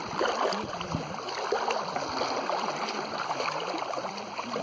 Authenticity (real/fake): fake